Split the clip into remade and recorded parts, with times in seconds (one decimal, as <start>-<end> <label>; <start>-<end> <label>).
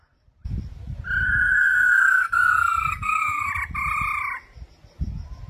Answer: 0.0-1.2 recorded; 1.2-3.5 remade; 3.5-5.5 recorded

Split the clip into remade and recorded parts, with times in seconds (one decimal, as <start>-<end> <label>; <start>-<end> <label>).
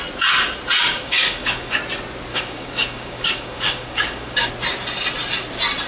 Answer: 0.0-0.9 recorded; 0.9-1.8 remade; 1.8-2.3 recorded; 2.3-4.5 remade; 4.5-5.9 recorded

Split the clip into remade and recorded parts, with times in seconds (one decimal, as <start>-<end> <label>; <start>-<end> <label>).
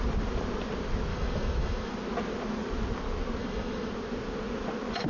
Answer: 0.0-1.1 recorded; 1.1-1.9 remade; 1.9-3.4 recorded; 3.4-3.9 remade; 3.9-5.1 recorded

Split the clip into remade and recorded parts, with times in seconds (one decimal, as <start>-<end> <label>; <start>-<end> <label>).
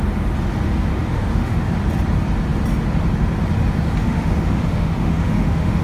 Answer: 0.0-0.9 recorded; 0.9-1.7 remade; 1.7-4.0 recorded; 4.0-5.8 remade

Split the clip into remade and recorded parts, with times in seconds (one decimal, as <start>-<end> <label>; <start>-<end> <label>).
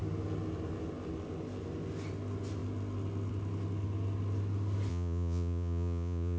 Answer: 0.0-4.9 recorded; 4.9-6.4 remade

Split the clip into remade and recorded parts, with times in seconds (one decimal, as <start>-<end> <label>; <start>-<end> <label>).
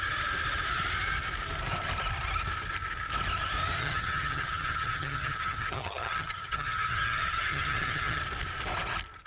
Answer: 0.0-3.8 recorded; 3.8-8.2 remade; 8.2-9.3 recorded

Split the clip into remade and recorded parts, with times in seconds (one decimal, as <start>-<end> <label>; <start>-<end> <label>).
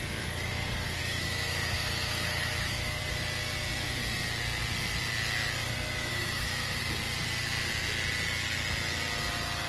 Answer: 0.0-1.0 recorded; 1.0-3.0 remade; 3.0-6.1 recorded; 6.1-6.8 remade; 6.8-9.7 recorded